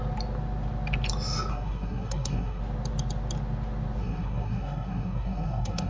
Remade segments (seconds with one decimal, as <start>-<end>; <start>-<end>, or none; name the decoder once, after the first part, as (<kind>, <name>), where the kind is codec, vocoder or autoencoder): 1.5-2.6 (codec, SNAC); 4.0-5.9